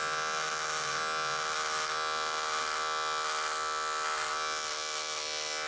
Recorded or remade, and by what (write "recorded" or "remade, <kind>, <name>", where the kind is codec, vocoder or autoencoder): recorded